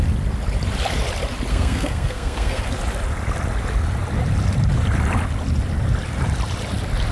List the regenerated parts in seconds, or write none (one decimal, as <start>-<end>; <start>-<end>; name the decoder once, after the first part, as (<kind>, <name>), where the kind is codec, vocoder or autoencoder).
1.5-2.6 (codec, SNAC)